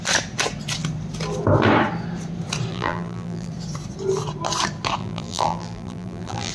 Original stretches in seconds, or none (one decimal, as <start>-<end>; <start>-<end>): 0.0-2.7; 3.5-5.0